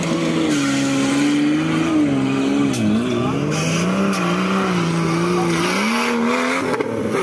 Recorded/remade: recorded